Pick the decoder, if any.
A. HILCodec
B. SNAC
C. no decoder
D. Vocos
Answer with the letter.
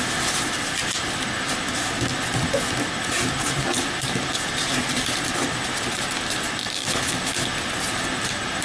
C